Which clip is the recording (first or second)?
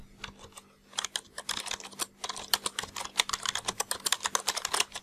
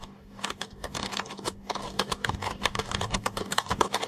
first